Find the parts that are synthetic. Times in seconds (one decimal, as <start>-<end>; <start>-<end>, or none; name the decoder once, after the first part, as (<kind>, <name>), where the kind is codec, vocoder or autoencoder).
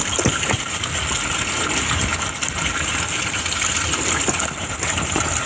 none